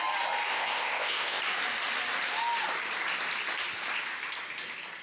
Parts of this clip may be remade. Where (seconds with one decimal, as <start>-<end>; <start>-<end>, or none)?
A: 0.5-1.4